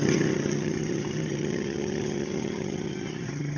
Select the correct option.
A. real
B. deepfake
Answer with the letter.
B